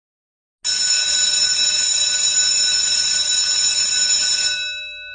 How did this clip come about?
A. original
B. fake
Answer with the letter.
A